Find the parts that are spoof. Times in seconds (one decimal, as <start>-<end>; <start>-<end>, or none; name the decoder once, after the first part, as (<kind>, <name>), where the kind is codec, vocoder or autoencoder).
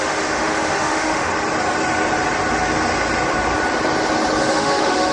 0.0-1.3 (autoencoder, DAC-VAE); 4.4-5.1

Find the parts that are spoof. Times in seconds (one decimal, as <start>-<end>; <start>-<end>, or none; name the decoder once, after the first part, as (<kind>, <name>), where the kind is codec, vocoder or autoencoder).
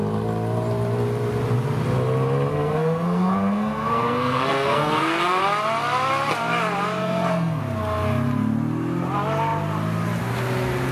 2.5-5.4 (codec, SNAC); 7.0-7.6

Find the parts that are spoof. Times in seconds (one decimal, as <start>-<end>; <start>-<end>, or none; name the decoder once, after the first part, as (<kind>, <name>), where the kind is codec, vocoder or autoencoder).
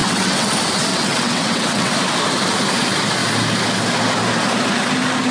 0.0-0.5 (vocoder, WaveNeXt); 0.9-1.9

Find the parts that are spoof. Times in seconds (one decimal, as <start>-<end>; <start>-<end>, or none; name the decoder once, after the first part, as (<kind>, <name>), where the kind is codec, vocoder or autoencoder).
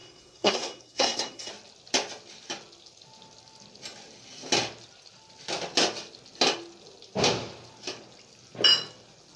0.0-1.5 (codec, SNAC)